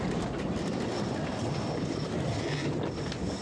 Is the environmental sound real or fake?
real